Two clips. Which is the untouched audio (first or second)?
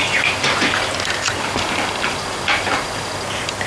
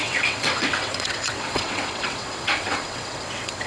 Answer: first